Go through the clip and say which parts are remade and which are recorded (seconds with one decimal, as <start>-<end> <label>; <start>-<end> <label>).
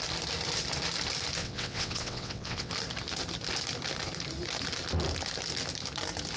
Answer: 0.0-1.4 recorded; 1.4-2.7 remade; 2.7-6.4 recorded